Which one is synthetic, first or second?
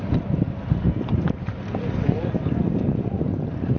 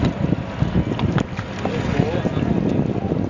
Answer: first